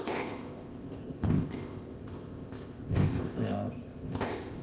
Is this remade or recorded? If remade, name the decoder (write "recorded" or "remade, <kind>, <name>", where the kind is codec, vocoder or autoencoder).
remade, codec, ZipCodec